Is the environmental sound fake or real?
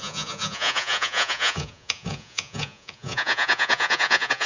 fake